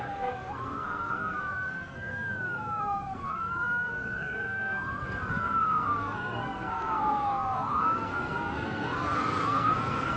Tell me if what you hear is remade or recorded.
remade